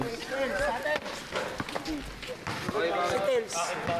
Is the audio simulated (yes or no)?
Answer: no